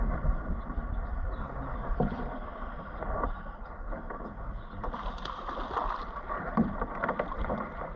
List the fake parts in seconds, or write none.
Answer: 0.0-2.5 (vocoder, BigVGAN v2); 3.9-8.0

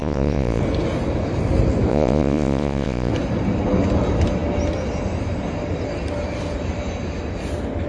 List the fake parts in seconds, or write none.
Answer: 0.0-0.6 (vocoder, Vocos); 1.9-3.1